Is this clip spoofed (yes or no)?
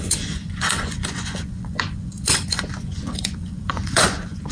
yes